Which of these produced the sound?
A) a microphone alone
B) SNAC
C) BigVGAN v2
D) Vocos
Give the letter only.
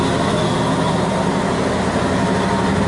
A